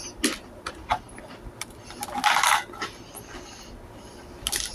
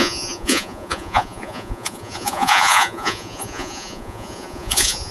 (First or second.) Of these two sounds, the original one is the first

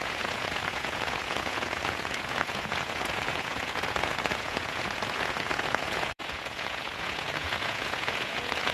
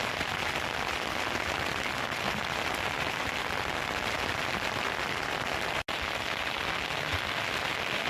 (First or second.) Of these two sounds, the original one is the second